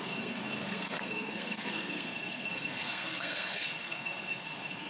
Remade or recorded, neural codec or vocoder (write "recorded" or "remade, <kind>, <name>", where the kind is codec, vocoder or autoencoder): remade, codec, SNAC